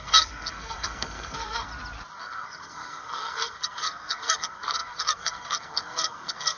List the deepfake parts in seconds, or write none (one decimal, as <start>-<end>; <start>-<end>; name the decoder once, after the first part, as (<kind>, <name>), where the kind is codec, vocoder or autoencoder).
0.0-1.7 (codec, SNAC); 2.2-6.6